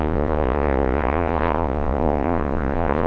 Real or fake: fake